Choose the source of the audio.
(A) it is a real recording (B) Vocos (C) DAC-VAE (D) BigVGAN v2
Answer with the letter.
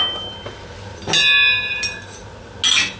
A